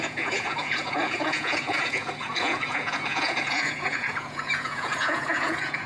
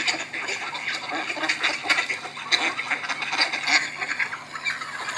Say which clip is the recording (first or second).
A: second